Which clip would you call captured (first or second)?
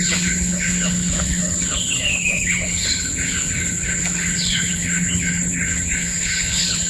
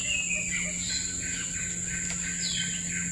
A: second